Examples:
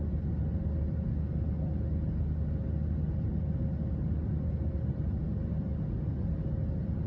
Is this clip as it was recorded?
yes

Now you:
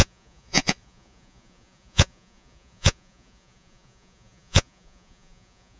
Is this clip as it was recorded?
no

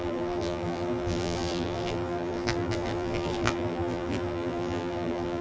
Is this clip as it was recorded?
no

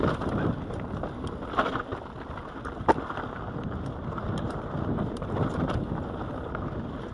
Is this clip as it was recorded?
yes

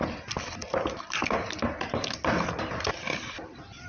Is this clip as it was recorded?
yes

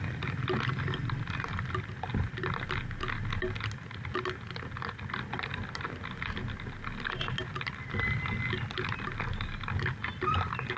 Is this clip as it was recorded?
yes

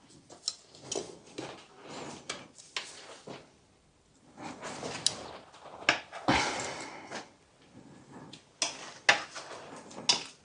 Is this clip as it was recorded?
yes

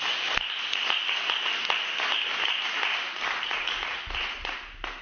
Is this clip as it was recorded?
yes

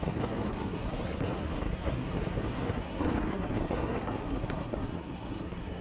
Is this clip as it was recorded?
no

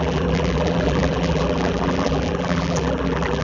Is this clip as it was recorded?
no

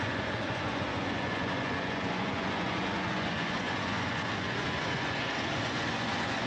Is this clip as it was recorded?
no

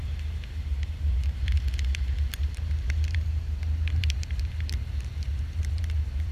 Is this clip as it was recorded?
no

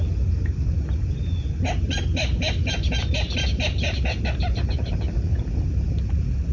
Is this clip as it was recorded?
yes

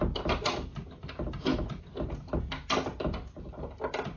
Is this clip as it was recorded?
yes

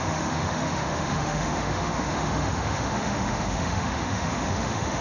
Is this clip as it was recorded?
no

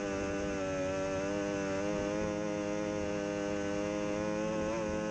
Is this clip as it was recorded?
yes